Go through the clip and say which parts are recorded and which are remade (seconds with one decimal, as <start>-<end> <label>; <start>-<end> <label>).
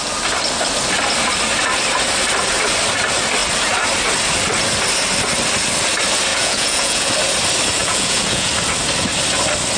0.0-6.3 recorded; 6.3-7.1 remade; 7.1-7.8 recorded; 7.8-8.5 remade; 8.5-9.8 recorded